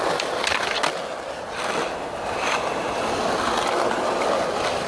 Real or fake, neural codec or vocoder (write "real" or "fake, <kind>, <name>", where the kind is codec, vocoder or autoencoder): real